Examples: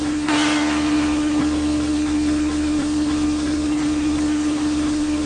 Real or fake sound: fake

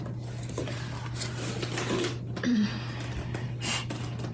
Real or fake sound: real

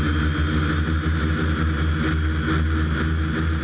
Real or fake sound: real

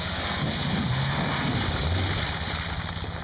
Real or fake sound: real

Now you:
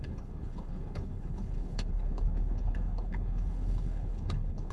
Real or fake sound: fake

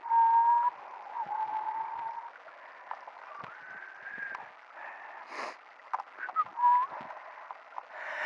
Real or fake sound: real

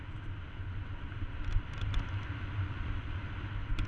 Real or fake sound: real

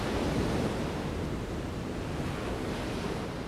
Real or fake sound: real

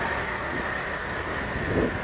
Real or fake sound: real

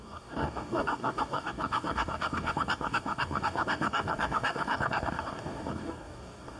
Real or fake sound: fake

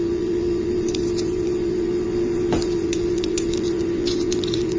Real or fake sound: fake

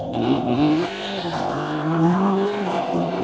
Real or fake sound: fake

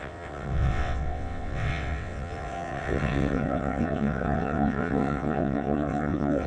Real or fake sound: fake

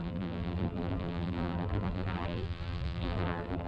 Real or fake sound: fake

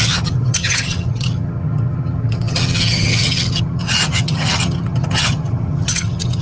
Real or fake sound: fake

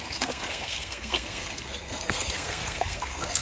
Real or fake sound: fake